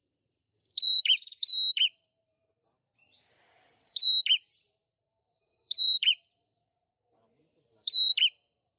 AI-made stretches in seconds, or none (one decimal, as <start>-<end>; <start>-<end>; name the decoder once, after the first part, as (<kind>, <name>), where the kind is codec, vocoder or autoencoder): 0.0-8.8 (vocoder, BigVGAN v2)